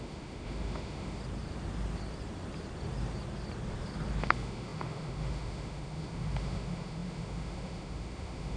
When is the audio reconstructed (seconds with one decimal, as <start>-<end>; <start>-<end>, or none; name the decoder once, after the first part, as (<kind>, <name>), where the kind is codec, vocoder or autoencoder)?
0.0-1.2 (autoencoder, DAC-VAE); 4.2-8.6